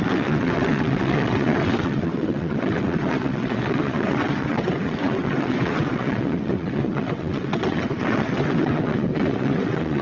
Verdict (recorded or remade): remade